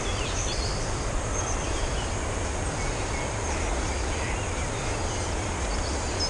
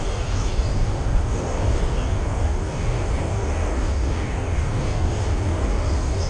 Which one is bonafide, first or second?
first